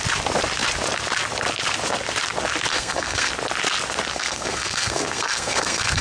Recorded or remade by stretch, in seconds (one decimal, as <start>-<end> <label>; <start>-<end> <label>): 0.0-2.7 recorded; 2.7-3.3 remade; 3.3-4.1 recorded; 4.1-6.0 remade